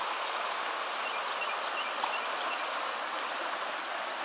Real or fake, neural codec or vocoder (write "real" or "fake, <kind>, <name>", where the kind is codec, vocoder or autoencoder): real